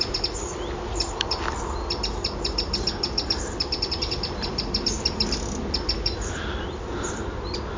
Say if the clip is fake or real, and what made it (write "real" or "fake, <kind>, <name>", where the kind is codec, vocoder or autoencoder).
real